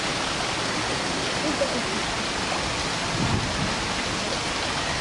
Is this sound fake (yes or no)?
no